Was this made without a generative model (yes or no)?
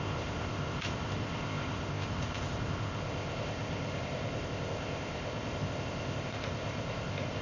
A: no